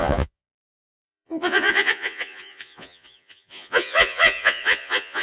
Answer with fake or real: fake